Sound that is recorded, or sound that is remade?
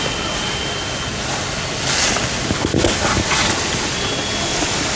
recorded